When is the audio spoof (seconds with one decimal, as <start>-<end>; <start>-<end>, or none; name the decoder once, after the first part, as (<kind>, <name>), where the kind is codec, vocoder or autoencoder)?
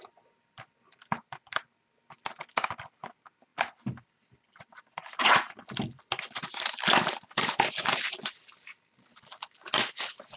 none